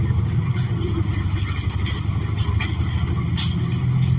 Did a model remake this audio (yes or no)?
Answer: no